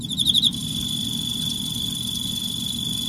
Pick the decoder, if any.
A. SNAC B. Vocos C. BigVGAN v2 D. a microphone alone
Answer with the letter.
D